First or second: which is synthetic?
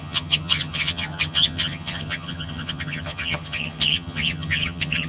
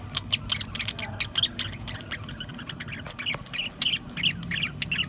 first